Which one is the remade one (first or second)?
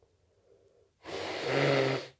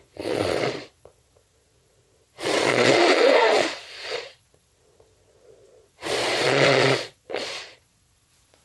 second